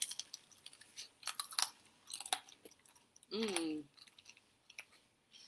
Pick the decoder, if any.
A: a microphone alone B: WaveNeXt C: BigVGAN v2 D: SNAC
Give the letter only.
A